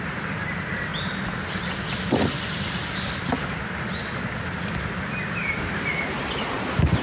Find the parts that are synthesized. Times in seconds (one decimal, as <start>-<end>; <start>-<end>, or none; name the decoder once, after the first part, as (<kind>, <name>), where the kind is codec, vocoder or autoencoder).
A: none